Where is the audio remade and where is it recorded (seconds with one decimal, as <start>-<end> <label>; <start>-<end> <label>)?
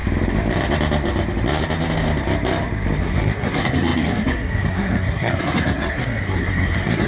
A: 0.0-3.0 recorded; 3.0-7.1 remade